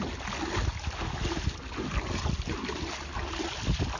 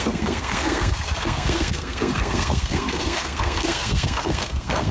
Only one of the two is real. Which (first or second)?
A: first